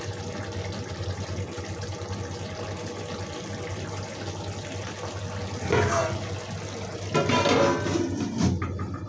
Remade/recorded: recorded